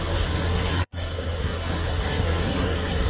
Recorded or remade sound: remade